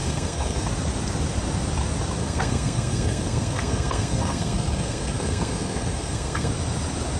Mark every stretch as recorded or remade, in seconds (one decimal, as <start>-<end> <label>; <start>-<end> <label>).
0.0-0.7 remade; 0.7-2.2 recorded; 2.2-6.5 remade; 6.5-7.2 recorded